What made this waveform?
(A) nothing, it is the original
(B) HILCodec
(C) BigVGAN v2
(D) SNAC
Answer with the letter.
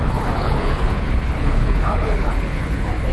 B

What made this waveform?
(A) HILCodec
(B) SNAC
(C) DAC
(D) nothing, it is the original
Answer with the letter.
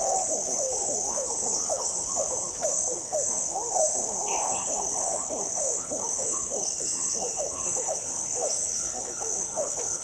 A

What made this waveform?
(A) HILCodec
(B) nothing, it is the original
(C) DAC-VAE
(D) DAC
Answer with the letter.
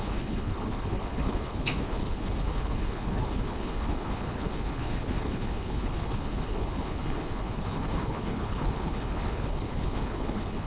A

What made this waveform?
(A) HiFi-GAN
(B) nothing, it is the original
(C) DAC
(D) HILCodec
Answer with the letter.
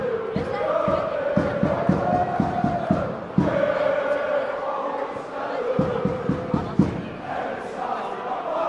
B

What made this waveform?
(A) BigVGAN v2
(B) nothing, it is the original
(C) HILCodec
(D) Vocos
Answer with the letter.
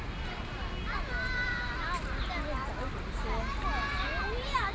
B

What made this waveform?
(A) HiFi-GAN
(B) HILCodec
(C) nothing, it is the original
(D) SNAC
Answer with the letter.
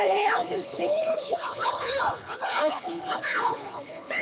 B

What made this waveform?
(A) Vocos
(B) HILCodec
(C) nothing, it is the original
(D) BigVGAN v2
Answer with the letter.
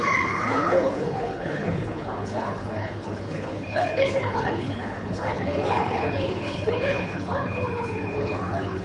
B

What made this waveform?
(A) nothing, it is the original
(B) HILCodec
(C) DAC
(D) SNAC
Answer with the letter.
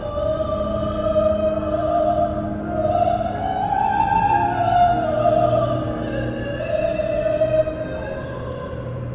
A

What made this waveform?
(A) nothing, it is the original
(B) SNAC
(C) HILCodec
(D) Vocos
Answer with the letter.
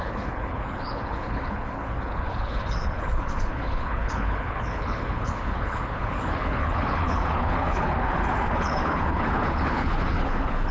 C